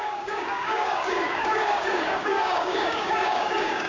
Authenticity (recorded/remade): remade